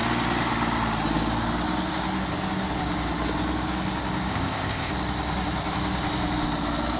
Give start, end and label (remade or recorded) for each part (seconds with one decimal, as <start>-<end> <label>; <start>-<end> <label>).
0.0-4.3 recorded; 4.3-4.9 remade; 4.9-7.0 recorded